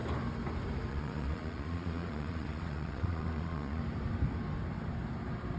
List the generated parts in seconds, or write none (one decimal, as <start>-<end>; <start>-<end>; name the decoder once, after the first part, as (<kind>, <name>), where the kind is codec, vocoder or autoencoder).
0.9-3.8 (vocoder, Vocos)